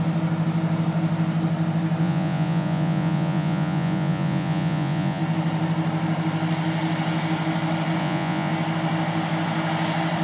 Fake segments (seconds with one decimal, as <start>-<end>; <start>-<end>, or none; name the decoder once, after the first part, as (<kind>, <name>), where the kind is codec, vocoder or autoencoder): 2.0-5.2 (vocoder, Vocos); 8.0-8.5